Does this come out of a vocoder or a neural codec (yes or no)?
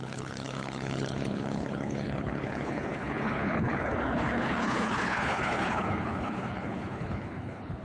yes